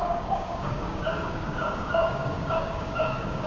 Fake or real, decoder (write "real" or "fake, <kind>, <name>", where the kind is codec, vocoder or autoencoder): fake, codec, DAC